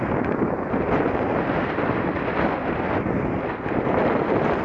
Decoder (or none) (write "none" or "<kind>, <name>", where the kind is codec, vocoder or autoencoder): none